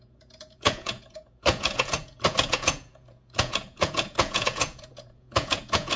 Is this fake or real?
fake